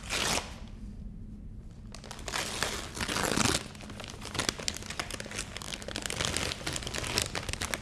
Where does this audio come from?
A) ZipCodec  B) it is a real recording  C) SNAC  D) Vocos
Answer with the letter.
B